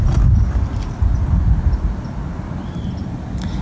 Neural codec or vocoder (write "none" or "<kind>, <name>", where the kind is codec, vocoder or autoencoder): none